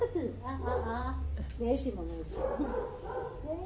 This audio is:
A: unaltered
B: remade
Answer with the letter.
A